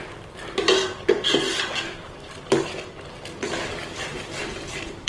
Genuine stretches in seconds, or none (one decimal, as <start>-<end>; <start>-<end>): 0.0-2.0; 3.0-3.5